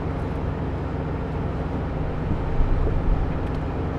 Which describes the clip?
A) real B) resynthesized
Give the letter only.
A